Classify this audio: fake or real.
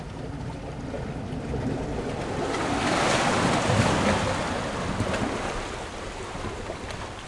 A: real